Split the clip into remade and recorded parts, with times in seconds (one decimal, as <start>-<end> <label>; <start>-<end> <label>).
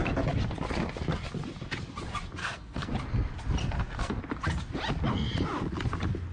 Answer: 0.0-2.4 recorded; 2.4-2.9 remade; 2.9-3.6 recorded; 3.6-4.2 remade; 4.2-6.3 recorded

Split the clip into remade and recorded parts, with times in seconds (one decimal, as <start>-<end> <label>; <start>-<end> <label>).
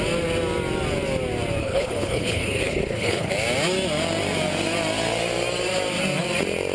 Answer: 0.0-1.6 recorded; 1.6-3.3 remade; 3.3-6.7 recorded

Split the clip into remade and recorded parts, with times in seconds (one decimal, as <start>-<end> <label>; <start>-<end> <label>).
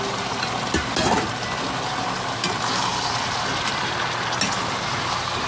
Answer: 0.0-2.9 recorded; 2.9-3.9 remade; 3.9-5.5 recorded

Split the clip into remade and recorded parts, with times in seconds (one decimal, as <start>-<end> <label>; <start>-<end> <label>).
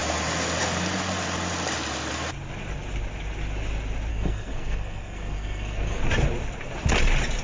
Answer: 0.0-4.1 recorded; 4.1-6.0 remade; 6.0-7.4 recorded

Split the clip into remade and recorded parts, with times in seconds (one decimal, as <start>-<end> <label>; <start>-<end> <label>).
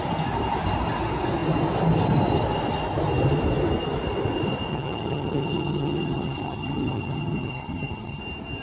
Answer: 0.0-4.7 recorded; 4.7-8.2 remade; 8.2-8.6 recorded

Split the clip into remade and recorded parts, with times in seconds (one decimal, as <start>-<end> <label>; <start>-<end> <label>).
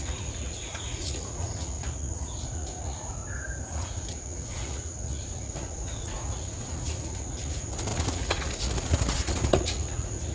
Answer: 0.0-3.2 remade; 3.2-3.7 recorded; 3.7-10.3 remade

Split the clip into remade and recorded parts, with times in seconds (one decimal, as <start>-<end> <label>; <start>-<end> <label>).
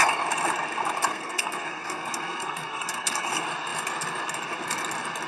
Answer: 0.0-1.1 recorded; 1.1-3.3 remade; 3.3-5.3 recorded